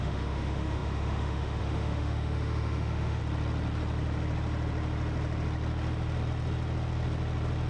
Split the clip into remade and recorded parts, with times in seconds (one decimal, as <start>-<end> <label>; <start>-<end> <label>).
0.0-3.2 remade; 3.2-7.7 recorded